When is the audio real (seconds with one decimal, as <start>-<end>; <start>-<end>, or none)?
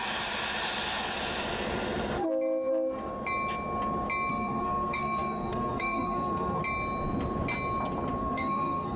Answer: 0.0-4.3; 6.6-8.2